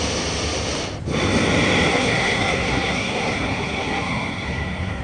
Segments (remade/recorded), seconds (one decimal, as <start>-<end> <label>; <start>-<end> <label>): 0.0-1.9 recorded; 1.9-5.0 remade